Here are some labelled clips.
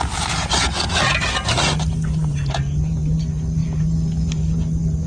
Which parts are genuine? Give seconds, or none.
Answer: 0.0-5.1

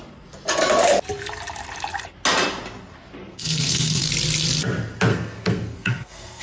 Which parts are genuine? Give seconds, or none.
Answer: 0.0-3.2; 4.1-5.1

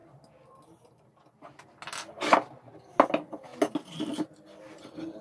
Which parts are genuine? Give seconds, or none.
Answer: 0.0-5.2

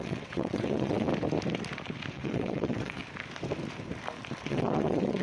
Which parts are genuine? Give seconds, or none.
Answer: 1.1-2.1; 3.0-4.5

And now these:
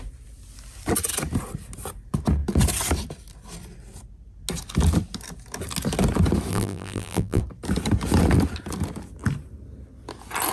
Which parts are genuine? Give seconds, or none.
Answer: 0.0-6.5; 7.4-10.5

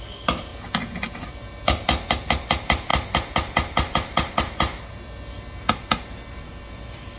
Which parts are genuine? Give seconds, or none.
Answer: 0.0-7.2

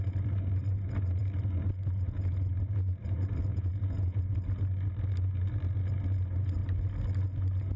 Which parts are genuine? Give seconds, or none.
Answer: 0.0-3.5; 4.2-7.8